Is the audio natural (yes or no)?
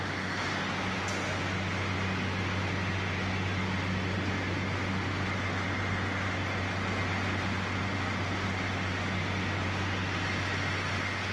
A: yes